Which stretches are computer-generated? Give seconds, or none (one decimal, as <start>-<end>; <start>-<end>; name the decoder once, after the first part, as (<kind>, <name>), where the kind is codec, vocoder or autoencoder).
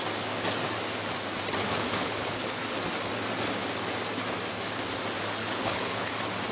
1.6-2.8 (codec, HILCodec); 5.4-6.1